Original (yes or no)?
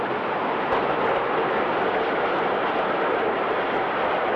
yes